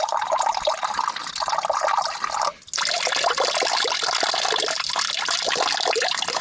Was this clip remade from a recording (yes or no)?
no